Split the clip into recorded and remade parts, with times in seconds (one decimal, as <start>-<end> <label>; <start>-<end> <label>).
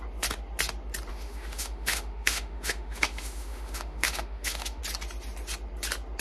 0.0-1.1 recorded; 1.1-4.8 remade; 4.8-6.2 recorded